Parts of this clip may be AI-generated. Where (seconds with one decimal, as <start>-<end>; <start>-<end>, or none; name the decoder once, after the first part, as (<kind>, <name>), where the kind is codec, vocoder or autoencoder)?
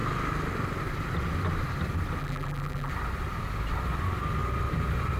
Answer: 2.2-2.9 (vocoder, BigVGAN v2)